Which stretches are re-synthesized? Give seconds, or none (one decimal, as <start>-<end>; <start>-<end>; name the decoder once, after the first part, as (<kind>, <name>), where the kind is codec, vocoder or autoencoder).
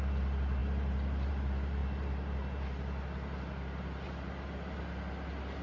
none